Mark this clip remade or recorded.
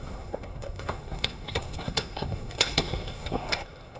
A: remade